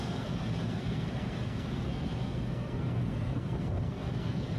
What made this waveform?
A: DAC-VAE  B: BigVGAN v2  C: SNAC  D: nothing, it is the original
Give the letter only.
C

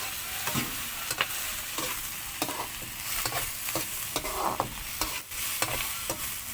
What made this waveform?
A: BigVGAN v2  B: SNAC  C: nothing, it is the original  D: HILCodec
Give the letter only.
C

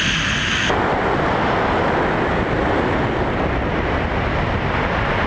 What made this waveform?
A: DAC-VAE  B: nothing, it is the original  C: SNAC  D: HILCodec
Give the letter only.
B